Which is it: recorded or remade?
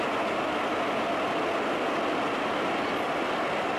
recorded